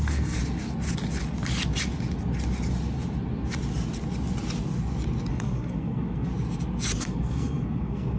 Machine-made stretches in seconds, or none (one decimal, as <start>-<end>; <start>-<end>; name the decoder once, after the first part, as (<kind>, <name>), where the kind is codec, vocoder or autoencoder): 0.0-0.4 (codec, SNAC); 5.3-6.3; 7.0-8.2